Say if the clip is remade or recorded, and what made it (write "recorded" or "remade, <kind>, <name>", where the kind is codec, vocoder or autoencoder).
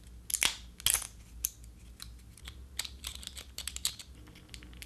recorded